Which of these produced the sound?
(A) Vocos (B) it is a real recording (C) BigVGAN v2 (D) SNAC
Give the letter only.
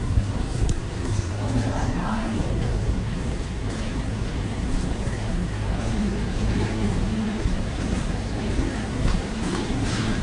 D